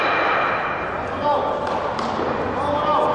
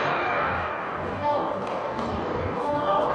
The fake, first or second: second